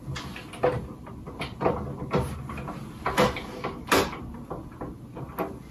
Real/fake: real